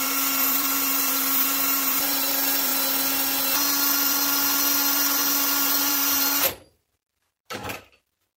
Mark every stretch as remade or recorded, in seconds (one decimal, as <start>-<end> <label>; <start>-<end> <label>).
0.0-2.7 remade; 2.7-5.9 recorded; 5.9-7.6 remade; 7.6-8.4 recorded

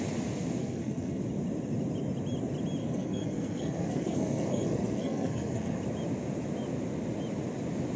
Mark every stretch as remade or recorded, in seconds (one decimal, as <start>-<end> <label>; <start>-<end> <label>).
0.0-0.6 recorded; 0.6-1.2 remade; 1.2-2.8 recorded; 2.8-5.8 remade; 5.8-8.0 recorded

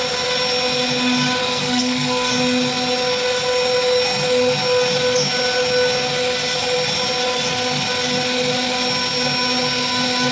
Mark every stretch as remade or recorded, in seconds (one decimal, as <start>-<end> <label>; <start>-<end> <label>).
0.0-1.4 recorded; 1.4-2.3 remade; 2.3-10.3 recorded

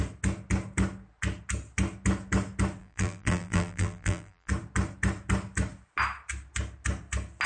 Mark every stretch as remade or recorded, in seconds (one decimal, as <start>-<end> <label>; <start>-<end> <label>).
0.0-2.8 recorded; 2.8-4.5 remade; 4.5-7.5 recorded

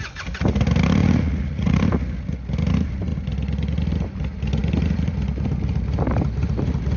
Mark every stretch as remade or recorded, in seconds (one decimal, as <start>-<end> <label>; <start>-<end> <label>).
0.0-1.0 recorded; 1.0-1.8 remade; 1.8-7.0 recorded